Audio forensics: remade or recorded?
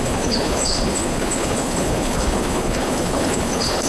remade